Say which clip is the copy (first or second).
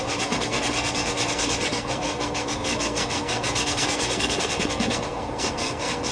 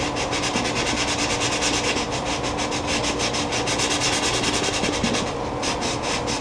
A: first